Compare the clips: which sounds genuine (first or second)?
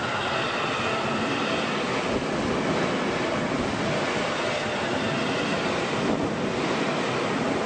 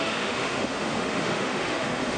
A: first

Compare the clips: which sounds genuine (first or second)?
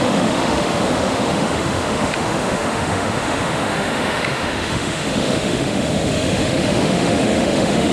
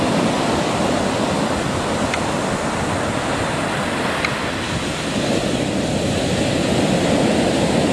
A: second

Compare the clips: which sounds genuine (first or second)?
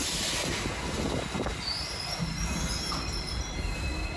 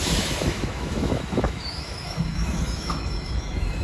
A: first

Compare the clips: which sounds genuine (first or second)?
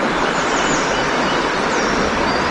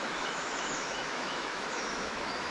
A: first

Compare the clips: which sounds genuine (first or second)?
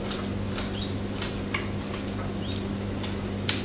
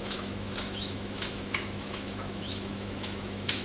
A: first